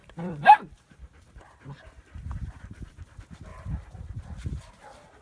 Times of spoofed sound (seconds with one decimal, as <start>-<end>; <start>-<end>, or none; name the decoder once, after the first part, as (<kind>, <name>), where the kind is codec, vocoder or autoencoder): 0.0-3.1 (vocoder, BigVGAN v2); 3.5-4.7